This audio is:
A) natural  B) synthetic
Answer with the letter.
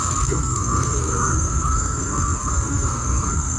B